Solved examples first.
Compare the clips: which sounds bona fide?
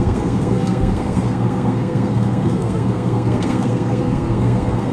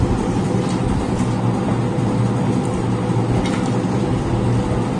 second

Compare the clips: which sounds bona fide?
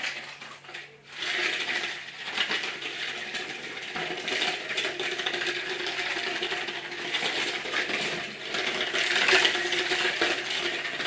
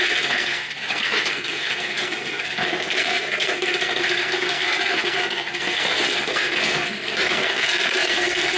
first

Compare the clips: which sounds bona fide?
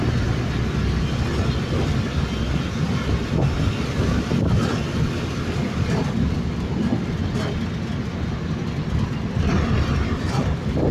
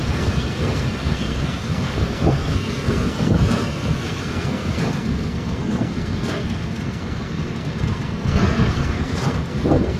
first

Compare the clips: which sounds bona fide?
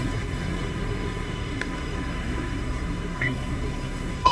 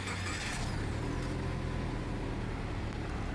second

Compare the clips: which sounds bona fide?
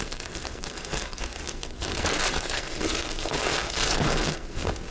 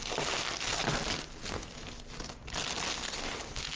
second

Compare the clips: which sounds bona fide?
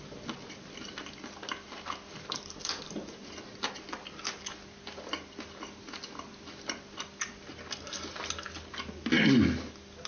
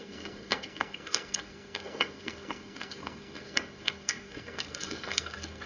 first